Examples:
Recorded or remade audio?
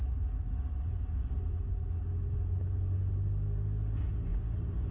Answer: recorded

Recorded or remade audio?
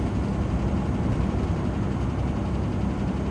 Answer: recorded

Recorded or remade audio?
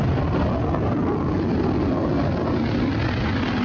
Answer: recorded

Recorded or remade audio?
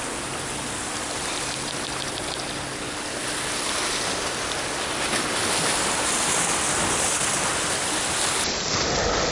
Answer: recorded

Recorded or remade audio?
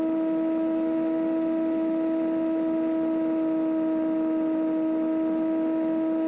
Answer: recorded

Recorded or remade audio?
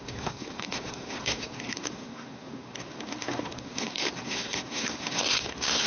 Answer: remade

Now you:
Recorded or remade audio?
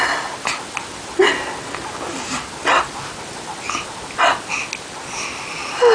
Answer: recorded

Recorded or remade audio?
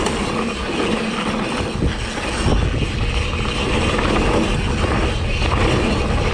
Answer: recorded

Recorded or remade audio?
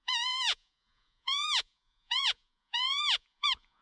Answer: remade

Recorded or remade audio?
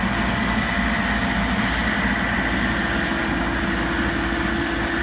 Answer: recorded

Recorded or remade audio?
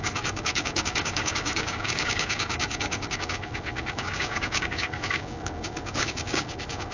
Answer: remade